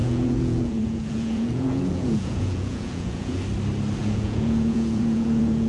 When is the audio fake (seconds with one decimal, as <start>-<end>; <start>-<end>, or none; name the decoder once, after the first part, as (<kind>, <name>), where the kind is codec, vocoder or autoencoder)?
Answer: 0.0-3.4 (vocoder, Vocos); 4.0-5.7